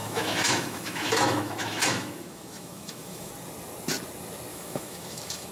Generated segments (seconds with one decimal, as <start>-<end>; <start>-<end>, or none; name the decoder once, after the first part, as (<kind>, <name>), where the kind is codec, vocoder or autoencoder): 0.0-3.3 (autoencoder, DAC-VAE); 4.5-5.5